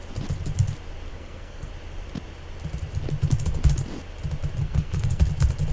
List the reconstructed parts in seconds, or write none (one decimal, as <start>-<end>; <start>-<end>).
1.1-1.7; 4.6-5.2